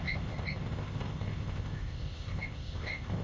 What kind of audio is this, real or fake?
fake